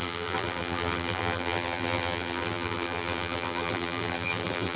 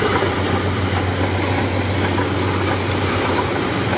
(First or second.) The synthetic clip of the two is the first